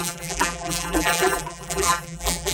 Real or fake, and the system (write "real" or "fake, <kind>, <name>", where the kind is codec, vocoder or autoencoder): fake, vocoder, BigVGAN v2